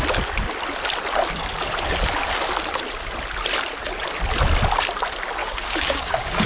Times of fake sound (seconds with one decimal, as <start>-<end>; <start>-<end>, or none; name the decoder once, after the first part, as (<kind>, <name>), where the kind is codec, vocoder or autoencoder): 5.4-6.5 (codec, DAC)